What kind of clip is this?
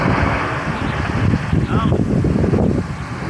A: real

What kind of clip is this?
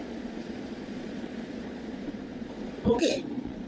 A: fake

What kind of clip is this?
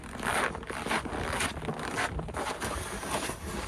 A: real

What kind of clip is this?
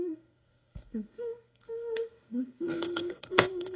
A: fake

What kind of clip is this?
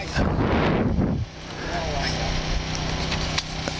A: real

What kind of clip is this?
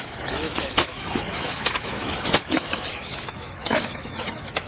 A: fake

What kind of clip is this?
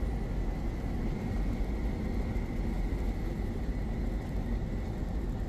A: real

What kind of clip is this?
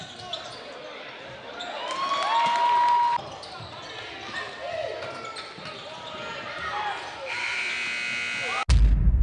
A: real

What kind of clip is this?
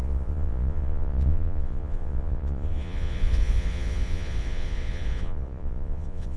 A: fake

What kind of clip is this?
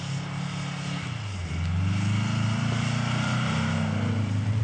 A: real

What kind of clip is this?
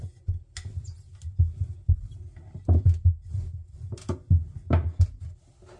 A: real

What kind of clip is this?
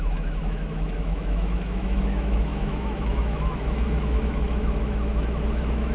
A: fake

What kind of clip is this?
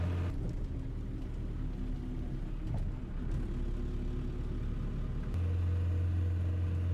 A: real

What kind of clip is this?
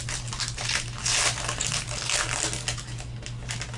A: real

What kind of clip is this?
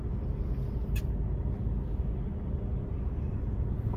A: real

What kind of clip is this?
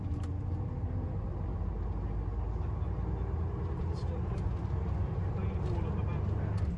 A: real